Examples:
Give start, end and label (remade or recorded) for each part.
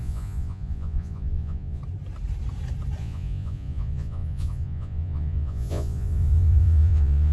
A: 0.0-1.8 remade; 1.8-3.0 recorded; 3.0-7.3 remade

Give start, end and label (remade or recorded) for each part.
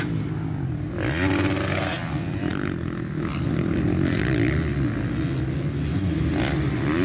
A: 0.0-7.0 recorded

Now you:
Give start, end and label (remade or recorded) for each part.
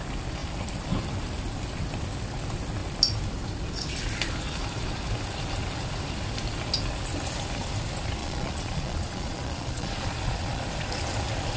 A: 0.0-8.2 recorded; 8.2-10.6 remade; 10.6-11.6 recorded